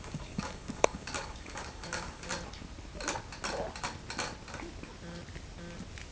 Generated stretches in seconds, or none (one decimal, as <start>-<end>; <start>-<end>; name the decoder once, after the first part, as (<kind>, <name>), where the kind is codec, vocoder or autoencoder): 0.0-2.3 (codec, DAC)